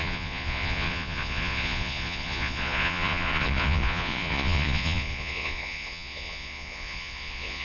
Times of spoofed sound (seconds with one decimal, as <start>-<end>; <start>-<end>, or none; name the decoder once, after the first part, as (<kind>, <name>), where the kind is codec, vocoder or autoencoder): 0.0-7.6 (vocoder, Vocos)